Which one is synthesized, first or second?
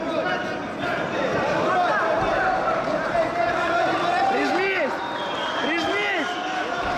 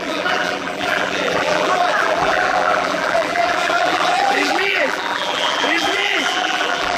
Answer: second